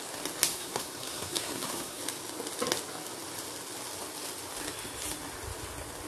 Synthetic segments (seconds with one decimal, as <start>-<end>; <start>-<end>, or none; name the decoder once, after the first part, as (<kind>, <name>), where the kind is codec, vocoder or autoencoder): 0.5-2.0 (codec, SNAC)